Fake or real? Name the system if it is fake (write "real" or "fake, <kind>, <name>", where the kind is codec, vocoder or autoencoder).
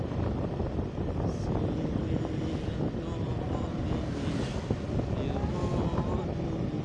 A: real